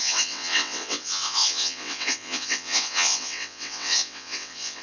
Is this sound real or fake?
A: fake